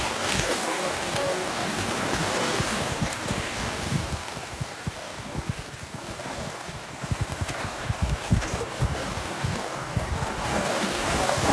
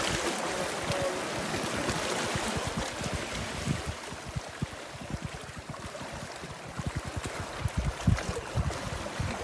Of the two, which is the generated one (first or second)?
first